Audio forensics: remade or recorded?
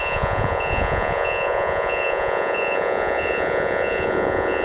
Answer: remade